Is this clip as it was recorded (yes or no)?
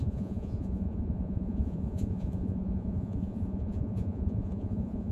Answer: no